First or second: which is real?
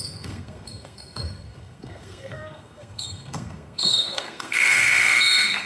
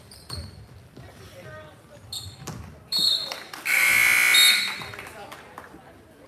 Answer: second